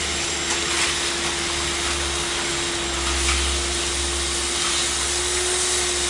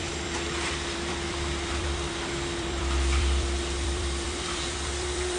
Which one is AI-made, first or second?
second